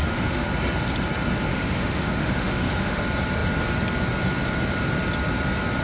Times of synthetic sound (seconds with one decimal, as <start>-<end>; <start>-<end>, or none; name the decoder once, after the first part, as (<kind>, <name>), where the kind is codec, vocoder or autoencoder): 0.0-0.5 (autoencoder, DAC-VAE); 1.5-3.0